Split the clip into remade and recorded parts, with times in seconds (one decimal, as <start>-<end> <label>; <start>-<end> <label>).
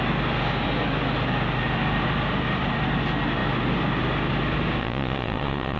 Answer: 0.0-4.8 recorded; 4.8-5.8 remade